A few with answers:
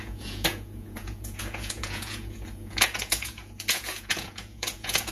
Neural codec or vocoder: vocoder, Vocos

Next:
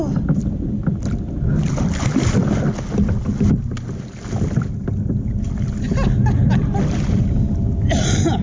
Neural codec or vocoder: none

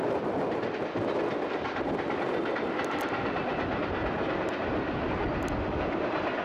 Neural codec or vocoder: none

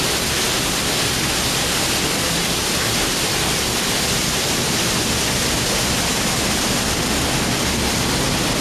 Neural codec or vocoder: none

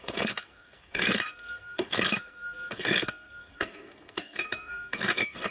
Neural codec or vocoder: codec, SNAC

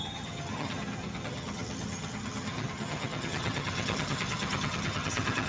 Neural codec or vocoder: vocoder, HiFi-GAN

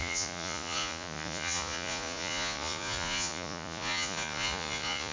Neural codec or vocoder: vocoder, Vocos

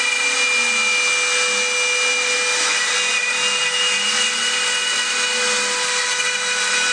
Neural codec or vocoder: none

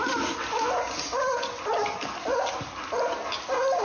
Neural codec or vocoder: none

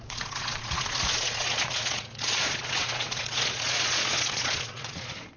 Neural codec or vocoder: vocoder, Vocos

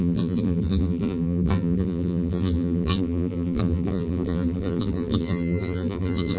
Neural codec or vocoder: vocoder, BigVGAN v2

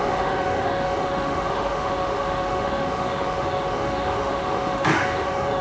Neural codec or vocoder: autoencoder, DAC-VAE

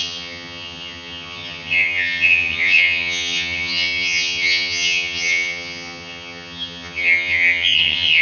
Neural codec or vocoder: vocoder, HiFi-GAN